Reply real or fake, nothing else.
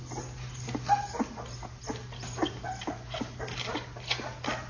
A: real